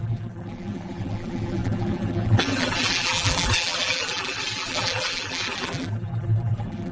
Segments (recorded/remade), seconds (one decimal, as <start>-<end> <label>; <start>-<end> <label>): 0.0-6.9 remade